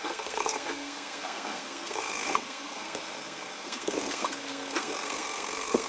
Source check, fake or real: fake